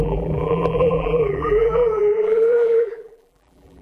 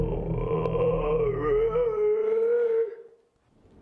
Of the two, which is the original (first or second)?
second